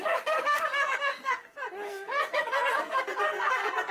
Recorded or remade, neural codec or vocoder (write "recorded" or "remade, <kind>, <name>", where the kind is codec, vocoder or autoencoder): remade, codec, SNAC